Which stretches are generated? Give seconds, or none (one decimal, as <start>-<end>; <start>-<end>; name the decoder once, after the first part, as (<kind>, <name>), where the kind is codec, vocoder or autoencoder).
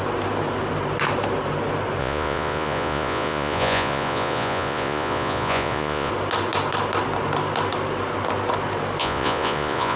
2.0-6.1 (vocoder, Vocos); 9.0-10.0